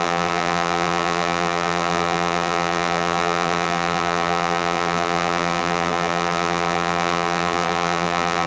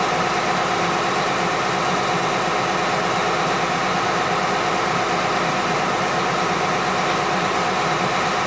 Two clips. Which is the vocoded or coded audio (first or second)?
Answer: first